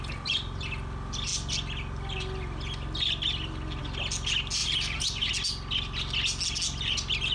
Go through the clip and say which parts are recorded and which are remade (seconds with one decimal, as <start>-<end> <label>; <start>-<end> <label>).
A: 0.0-4.6 recorded; 4.6-5.3 remade; 5.3-7.3 recorded

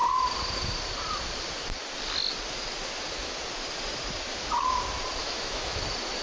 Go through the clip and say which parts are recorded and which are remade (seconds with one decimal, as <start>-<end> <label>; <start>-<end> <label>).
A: 0.0-5.2 recorded; 5.2-5.8 remade; 5.8-6.2 recorded

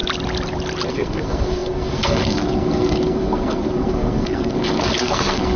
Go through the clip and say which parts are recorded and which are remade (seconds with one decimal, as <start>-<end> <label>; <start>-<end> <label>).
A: 0.0-0.9 recorded; 0.9-5.6 remade